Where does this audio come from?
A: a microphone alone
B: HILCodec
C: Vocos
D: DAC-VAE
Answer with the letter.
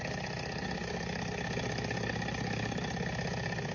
A